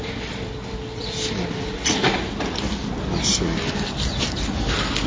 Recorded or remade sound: recorded